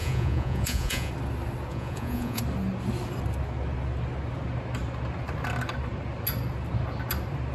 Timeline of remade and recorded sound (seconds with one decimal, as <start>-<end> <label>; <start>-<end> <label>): 0.0-1.1 remade; 1.1-1.7 recorded; 1.7-2.4 remade; 2.4-7.5 recorded

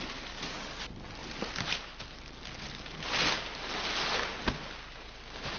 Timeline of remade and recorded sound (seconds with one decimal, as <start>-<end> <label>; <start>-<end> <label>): 0.0-5.6 recorded

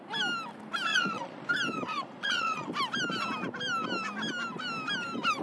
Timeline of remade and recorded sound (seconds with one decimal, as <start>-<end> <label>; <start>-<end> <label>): 0.0-0.9 recorded; 0.9-1.5 remade; 1.5-1.9 recorded; 1.9-2.7 remade; 2.7-5.4 recorded

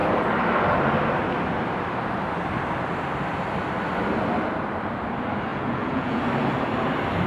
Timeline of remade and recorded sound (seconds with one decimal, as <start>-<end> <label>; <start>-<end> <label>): 0.0-5.5 recorded; 5.5-6.2 remade; 6.2-7.3 recorded

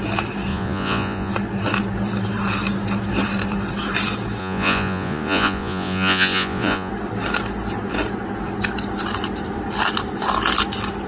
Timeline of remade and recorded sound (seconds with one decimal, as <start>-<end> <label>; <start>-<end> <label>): 0.0-0.5 recorded; 0.5-1.3 remade; 1.3-4.4 recorded; 4.4-6.9 remade; 6.9-11.1 recorded

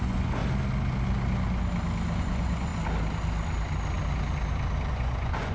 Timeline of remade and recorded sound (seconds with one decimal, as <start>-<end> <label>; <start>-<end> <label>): 0.0-0.4 remade; 0.4-2.2 recorded; 2.2-2.7 remade; 2.7-4.9 recorded; 4.9-5.5 remade